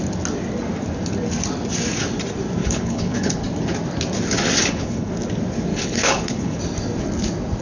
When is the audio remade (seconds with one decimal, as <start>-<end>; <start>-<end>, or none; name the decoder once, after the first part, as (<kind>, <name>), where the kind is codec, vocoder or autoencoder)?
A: 2.6-3.4 (codec, HILCodec); 4.6-5.1; 5.7-6.6